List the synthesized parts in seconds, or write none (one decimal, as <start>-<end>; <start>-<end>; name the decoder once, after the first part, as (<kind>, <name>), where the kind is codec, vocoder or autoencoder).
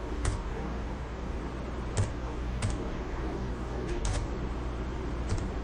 0.0-1.4 (codec, DAC); 2.1-4.3